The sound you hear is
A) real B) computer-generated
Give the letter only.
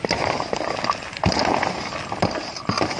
A